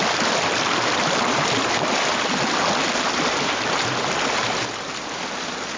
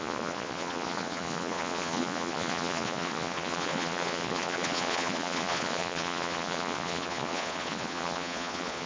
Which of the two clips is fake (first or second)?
second